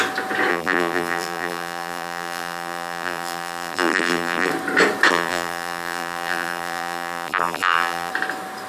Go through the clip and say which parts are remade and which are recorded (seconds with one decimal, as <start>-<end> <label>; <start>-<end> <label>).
0.0-0.5 recorded; 0.5-4.5 remade; 4.5-5.1 recorded; 5.1-8.1 remade; 8.1-8.7 recorded